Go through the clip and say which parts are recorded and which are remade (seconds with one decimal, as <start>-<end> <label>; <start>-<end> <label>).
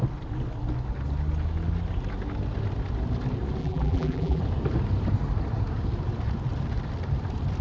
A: 0.0-3.6 recorded; 3.6-4.4 remade; 4.4-7.6 recorded